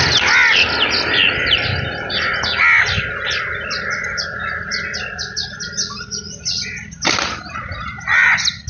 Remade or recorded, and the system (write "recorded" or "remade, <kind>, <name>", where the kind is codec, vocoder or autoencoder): recorded